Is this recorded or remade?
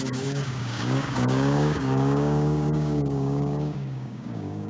remade